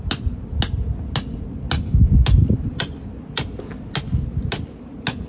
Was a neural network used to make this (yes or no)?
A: no